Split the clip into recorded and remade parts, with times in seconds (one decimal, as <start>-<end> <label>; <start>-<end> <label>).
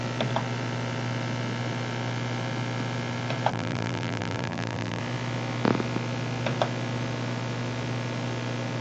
0.0-3.5 recorded; 3.5-5.0 remade; 5.0-8.8 recorded